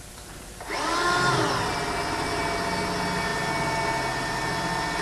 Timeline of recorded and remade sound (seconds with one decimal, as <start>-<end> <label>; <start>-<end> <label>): 0.0-5.0 recorded